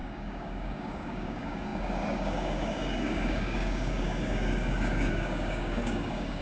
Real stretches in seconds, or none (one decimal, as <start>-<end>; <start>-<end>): none